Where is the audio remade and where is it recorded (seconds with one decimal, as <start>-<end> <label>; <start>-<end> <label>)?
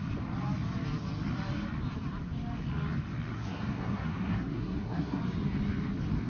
0.0-3.3 recorded; 3.3-5.2 remade; 5.2-6.3 recorded